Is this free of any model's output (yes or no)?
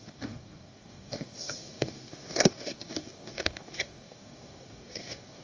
no